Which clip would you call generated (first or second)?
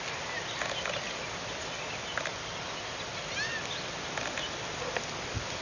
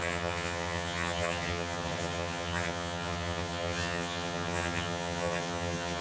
second